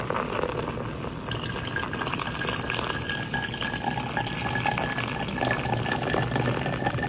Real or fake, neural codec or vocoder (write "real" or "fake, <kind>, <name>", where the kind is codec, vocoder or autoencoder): real